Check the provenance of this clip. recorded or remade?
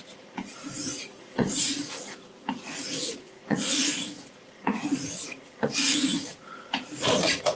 remade